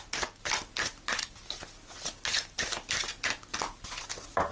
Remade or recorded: recorded